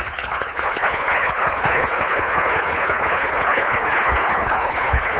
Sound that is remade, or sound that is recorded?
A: remade